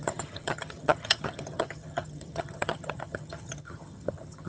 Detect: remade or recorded remade